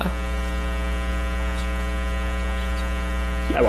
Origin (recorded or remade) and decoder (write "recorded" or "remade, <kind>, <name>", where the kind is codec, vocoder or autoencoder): recorded